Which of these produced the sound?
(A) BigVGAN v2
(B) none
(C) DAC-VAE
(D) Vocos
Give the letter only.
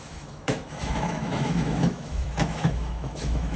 C